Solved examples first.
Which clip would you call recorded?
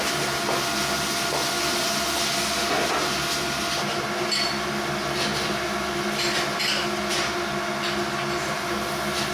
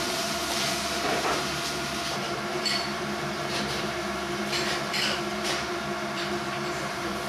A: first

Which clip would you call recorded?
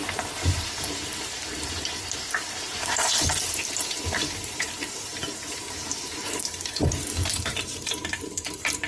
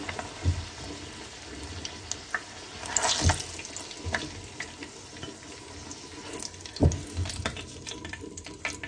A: second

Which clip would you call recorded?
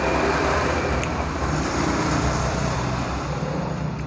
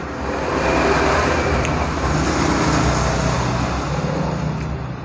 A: second